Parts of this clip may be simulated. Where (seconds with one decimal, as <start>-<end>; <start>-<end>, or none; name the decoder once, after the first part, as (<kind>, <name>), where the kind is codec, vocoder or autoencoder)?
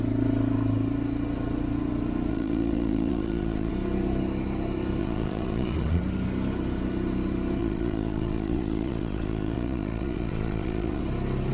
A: 2.3-3.7 (vocoder, Vocos); 5.0-6.0; 7.6-11.0